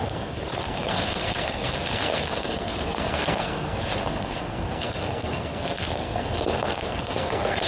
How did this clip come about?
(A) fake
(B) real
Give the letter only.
A